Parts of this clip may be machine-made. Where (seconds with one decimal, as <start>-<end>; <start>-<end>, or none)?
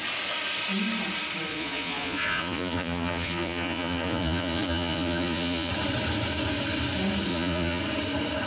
1.5-5.7; 7.3-7.8